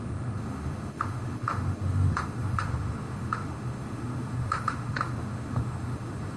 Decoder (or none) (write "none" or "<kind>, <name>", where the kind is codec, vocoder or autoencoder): autoencoder, DAC-VAE